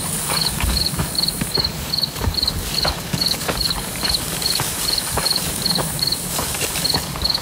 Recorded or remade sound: remade